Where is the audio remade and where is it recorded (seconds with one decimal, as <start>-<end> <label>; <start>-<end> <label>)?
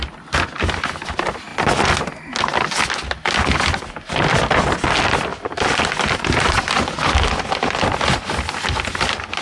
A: 0.0-9.4 recorded